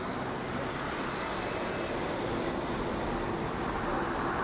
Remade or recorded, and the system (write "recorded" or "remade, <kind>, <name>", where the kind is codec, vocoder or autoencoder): recorded